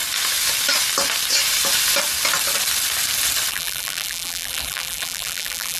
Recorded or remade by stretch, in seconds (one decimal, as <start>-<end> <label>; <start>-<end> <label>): 0.0-3.5 recorded; 3.5-5.8 remade